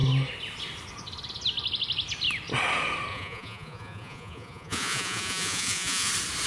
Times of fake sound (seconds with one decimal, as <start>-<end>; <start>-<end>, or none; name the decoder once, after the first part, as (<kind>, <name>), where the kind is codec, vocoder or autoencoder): 3.1-6.1 (vocoder, Vocos)